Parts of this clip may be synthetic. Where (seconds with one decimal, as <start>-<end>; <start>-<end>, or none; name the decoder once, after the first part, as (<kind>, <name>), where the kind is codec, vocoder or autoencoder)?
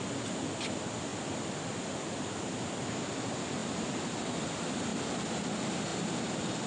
none